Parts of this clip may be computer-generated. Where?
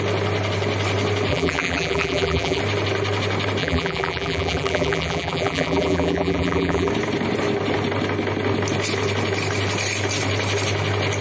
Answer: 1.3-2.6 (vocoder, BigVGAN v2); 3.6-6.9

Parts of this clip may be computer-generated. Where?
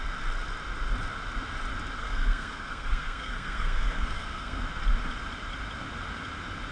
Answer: 2.0-4.6 (codec, SNAC)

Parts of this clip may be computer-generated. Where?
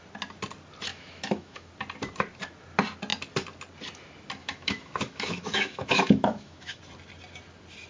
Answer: 0.9-1.7 (autoencoder, DAC-VAE); 4.4-6.8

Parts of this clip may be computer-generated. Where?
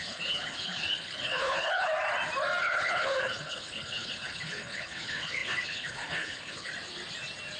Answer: 0.0-1.9 (codec, HILCodec); 2.6-6.7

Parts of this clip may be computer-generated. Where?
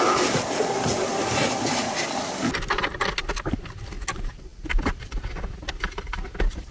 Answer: none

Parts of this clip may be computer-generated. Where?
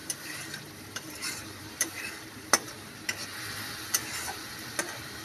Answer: 0.0-2.7 (vocoder, BigVGAN v2)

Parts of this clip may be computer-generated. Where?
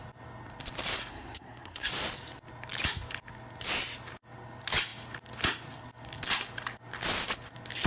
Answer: 1.1-1.9 (codec, SNAC)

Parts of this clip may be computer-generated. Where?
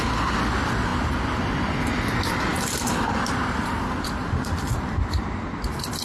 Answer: 2.5-4.7 (vocoder, BigVGAN v2)